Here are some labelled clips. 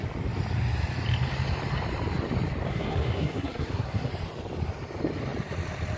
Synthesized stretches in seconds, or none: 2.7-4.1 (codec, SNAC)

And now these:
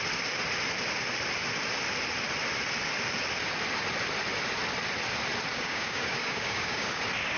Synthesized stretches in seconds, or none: 5.5-7.0 (codec, DAC)

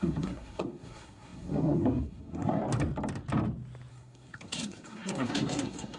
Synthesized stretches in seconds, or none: 0.0-2.6 (codec, SNAC); 3.9-6.0

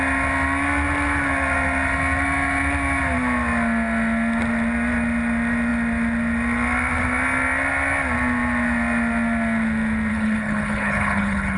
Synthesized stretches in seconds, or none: 10.1-11.6 (codec, HILCodec)

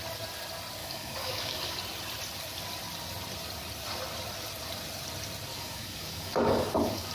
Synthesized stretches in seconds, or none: 0.8-1.8 (codec, DAC); 5.5-7.1